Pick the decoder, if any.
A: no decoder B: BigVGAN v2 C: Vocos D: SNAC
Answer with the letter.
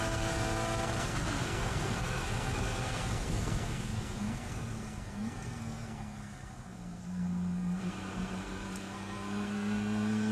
D